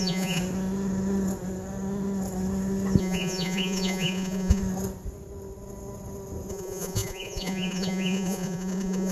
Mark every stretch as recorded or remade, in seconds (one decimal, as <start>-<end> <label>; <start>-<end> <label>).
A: 0.0-0.4 remade; 0.4-3.0 recorded; 3.0-4.6 remade; 4.6-6.5 recorded; 6.5-9.1 remade